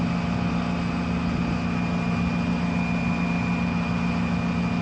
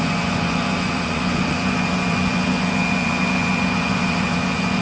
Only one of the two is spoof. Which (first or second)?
second